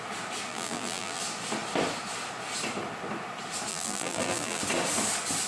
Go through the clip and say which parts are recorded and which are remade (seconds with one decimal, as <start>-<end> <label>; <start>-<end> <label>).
0.0-0.5 recorded; 0.5-1.2 remade; 1.2-3.7 recorded; 3.7-4.6 remade; 4.6-5.5 recorded